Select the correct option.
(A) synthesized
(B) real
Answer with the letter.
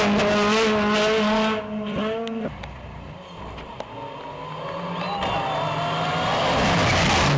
B